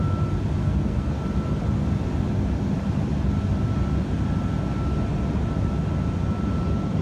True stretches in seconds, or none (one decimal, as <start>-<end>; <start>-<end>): 0.0-0.6; 1.2-7.0